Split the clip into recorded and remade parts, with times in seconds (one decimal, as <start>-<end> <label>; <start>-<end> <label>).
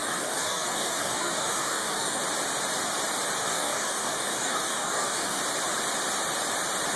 0.0-2.2 remade; 2.2-3.4 recorded; 3.4-5.4 remade; 5.4-7.0 recorded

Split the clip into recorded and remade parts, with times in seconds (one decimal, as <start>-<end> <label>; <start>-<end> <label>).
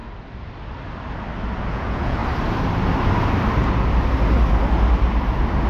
0.0-1.7 recorded; 1.7-2.2 remade; 2.2-5.7 recorded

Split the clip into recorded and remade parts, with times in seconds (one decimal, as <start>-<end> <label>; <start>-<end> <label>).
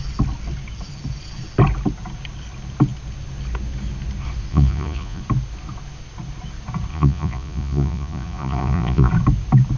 0.0-4.5 recorded; 4.5-5.2 remade; 5.2-6.9 recorded; 6.9-9.1 remade; 9.1-9.8 recorded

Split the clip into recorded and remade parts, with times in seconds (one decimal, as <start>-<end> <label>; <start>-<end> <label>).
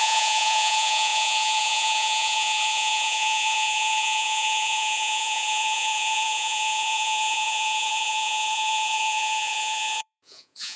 0.0-10.8 remade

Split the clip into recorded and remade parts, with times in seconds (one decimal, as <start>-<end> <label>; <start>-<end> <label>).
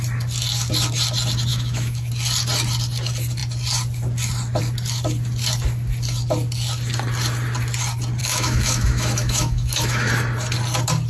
0.0-1.5 recorded; 1.5-2.1 remade; 2.1-8.2 recorded; 8.2-10.1 remade; 10.1-11.1 recorded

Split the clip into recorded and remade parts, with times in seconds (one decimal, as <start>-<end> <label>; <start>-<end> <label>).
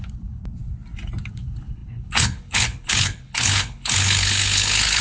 0.0-0.4 remade; 0.4-1.3 recorded; 1.3-5.0 remade